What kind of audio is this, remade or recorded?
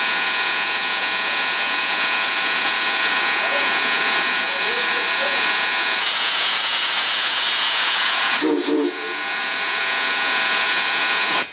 remade